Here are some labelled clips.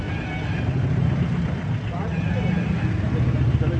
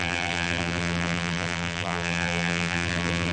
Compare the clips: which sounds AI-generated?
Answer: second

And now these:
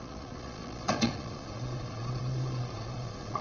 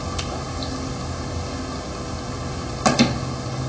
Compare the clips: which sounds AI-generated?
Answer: first